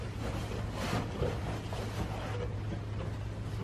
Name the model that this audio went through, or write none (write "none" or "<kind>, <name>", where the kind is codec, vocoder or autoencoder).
none